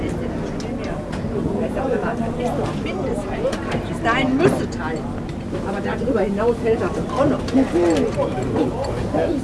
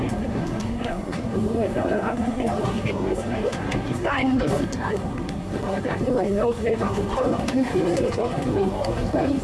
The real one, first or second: first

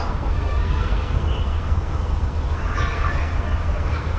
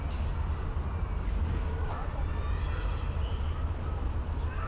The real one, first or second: second